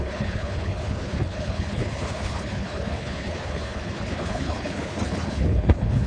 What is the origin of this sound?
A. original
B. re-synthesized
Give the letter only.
B